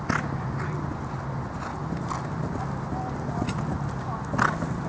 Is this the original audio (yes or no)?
yes